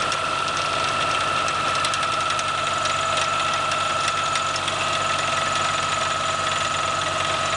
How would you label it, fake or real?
real